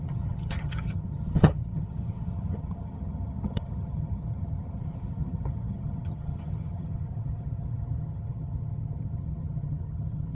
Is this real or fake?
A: fake